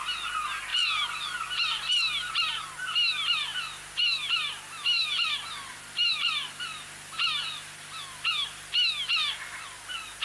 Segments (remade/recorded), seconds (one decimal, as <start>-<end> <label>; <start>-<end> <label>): 0.0-0.7 recorded; 0.7-2.3 remade; 2.3-3.5 recorded; 3.5-8.3 remade; 8.3-10.2 recorded